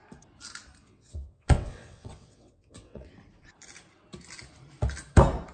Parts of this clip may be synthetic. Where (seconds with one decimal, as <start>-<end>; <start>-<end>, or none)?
0.8-3.1